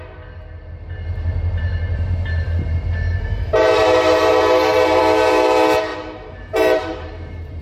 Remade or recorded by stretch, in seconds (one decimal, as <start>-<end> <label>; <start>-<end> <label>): 0.0-1.9 recorded; 1.9-5.0 remade; 5.0-5.9 recorded; 5.9-7.6 remade